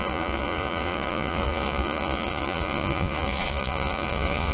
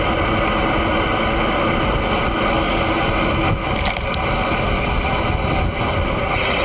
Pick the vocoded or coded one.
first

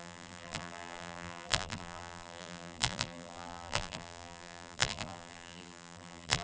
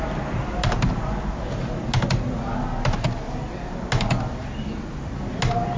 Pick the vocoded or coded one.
first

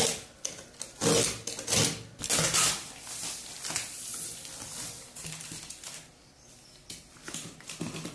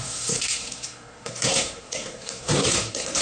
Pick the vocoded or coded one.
second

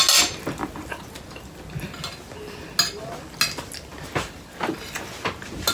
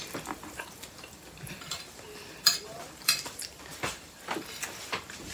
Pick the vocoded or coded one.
second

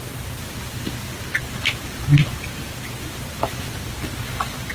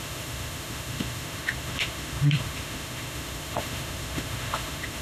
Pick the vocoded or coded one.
second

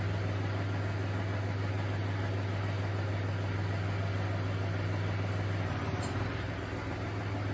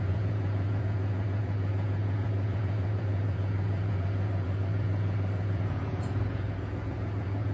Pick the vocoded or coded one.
second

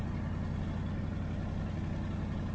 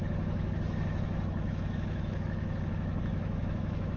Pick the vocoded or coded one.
second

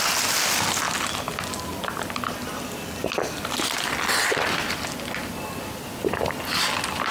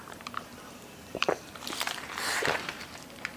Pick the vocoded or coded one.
second